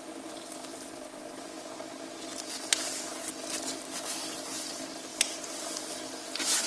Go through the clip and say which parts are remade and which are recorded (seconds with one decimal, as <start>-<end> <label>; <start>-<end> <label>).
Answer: 0.0-0.7 recorded; 0.7-1.7 remade; 1.7-5.1 recorded; 5.1-5.9 remade; 5.9-6.7 recorded